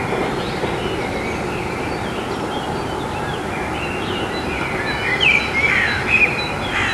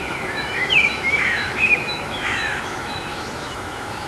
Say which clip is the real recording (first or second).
first